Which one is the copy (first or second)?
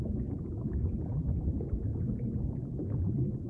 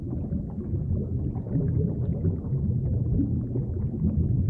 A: first